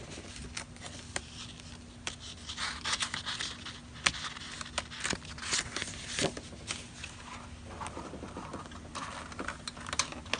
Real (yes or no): yes